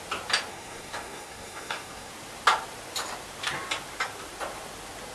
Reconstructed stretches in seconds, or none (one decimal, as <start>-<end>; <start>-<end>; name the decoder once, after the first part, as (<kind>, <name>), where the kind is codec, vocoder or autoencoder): 0.5-2.1 (codec, SNAC)